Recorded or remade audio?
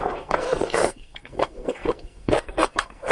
remade